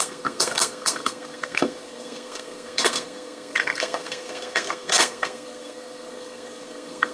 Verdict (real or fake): fake